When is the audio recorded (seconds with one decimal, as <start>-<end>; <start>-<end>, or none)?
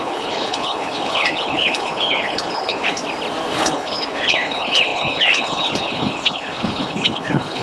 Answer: 3.0-3.5